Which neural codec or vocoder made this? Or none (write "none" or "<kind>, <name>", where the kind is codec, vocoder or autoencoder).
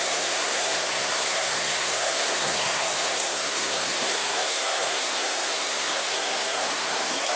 codec, SNAC